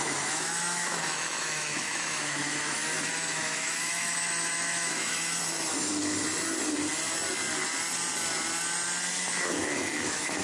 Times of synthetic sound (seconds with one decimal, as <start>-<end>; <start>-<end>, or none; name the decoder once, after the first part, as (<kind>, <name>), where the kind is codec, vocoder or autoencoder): 0.0-5.9 (autoencoder, DAC-VAE); 9.4-10.4